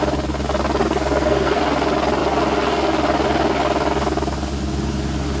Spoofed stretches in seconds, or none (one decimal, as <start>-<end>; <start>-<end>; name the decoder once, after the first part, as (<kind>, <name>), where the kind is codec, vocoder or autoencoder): 0.8-1.6 (codec, SNAC)